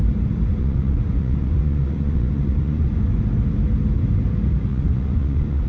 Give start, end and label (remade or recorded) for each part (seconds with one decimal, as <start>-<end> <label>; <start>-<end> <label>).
0.0-0.5 recorded; 0.5-3.2 remade; 3.2-4.7 recorded; 4.7-5.7 remade